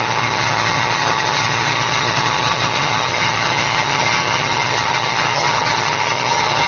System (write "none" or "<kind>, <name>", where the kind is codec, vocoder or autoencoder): vocoder, HiFi-GAN